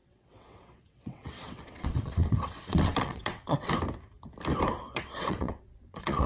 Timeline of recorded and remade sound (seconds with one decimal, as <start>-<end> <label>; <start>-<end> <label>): 0.0-3.7 remade; 3.7-4.8 recorded; 4.8-6.3 remade